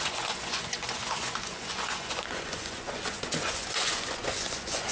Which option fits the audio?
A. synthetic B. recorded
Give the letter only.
A